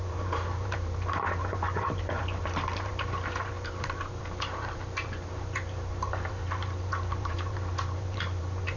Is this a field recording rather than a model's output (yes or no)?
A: no